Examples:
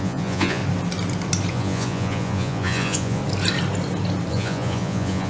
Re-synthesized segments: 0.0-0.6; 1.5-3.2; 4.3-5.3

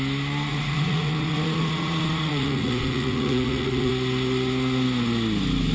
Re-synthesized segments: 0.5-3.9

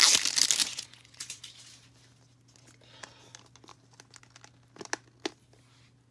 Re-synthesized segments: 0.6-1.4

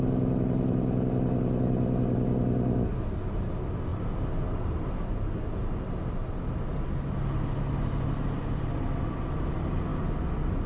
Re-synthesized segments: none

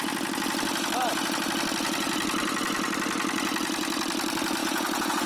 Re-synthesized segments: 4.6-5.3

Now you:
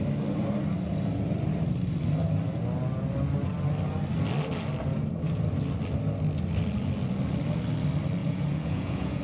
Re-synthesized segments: 8.2-9.2

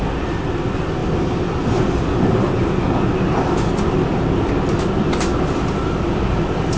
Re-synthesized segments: none

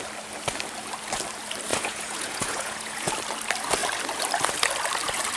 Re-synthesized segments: 1.7-3.1